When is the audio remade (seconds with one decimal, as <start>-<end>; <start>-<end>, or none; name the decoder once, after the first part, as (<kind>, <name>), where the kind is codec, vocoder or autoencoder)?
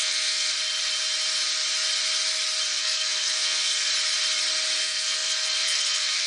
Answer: 0.0-0.5 (codec, SNAC); 2.7-3.9; 4.8-6.3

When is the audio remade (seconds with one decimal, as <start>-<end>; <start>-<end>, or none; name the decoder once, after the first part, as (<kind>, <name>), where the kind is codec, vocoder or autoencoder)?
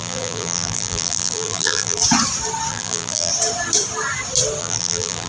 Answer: 0.0-2.0 (vocoder, BigVGAN v2); 2.7-3.3; 4.6-5.3